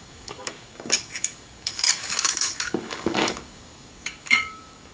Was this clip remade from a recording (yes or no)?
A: yes